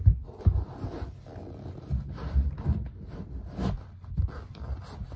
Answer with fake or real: real